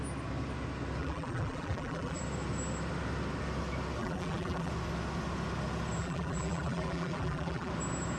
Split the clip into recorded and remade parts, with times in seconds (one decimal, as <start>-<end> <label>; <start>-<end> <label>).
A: 0.0-1.0 recorded; 1.0-2.2 remade; 2.2-4.0 recorded; 4.0-4.7 remade; 4.7-6.0 recorded; 6.0-7.7 remade; 7.7-8.2 recorded